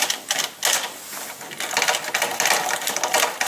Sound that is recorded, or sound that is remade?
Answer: recorded